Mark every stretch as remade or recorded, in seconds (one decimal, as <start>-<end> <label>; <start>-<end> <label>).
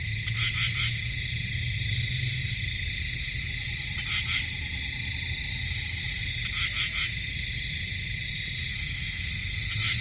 0.0-8.7 recorded; 8.7-10.0 remade